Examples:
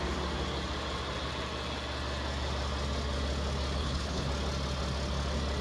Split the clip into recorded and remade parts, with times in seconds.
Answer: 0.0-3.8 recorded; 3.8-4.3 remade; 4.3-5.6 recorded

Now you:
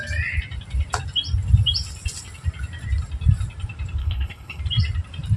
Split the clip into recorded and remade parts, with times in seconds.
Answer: 0.0-4.0 recorded; 4.0-4.6 remade; 4.6-5.4 recorded